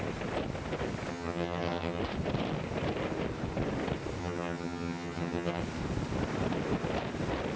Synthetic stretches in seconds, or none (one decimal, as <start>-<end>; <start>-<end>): 1.1-2.0; 4.2-5.6